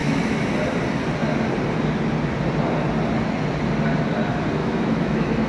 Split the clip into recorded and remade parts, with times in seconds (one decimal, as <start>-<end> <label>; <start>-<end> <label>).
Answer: 0.0-0.5 remade; 0.5-4.6 recorded; 4.6-5.5 remade